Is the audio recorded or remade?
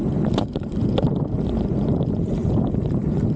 remade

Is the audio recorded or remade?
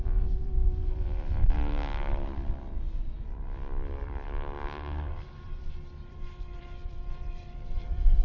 remade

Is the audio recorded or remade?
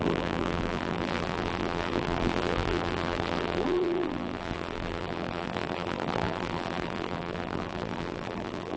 remade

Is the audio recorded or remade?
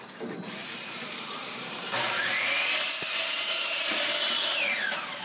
remade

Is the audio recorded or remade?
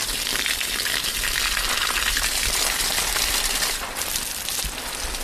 recorded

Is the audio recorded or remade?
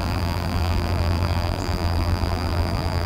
remade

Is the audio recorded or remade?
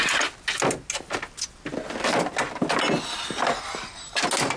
recorded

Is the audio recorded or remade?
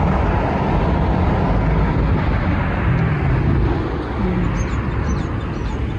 recorded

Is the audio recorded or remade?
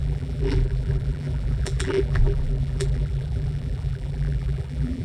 remade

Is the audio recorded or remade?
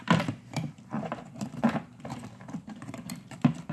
remade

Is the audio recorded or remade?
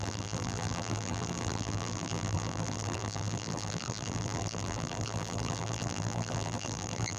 remade